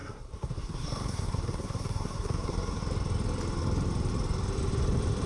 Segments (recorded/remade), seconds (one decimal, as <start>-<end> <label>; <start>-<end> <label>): 0.0-2.8 remade; 2.8-5.3 recorded